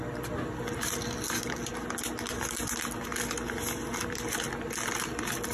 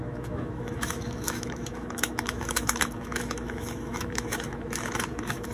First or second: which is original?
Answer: first